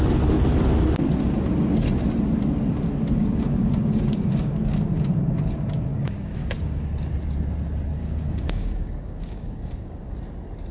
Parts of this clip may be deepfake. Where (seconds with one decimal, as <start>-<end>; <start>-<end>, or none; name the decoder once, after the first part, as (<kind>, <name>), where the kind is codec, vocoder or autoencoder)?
3.2-5.1 (codec, DAC); 5.9-6.9; 8.0-10.2

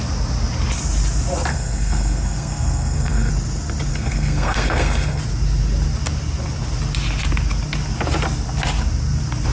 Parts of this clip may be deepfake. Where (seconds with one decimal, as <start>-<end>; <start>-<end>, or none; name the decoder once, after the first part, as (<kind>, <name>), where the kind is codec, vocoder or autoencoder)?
1.5-3.3 (codec, SNAC); 3.9-5.2

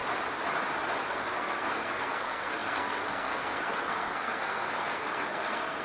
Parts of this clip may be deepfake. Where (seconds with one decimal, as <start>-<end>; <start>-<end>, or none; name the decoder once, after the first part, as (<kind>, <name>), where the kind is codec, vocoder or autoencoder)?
1.0-5.8 (codec, SNAC)